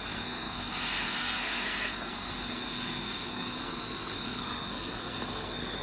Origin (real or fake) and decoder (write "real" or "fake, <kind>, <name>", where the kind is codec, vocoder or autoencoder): fake, codec, SNAC